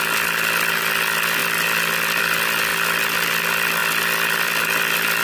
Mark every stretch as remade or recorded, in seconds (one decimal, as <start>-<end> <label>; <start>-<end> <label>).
0.0-5.2 recorded